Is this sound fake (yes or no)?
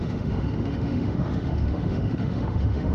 yes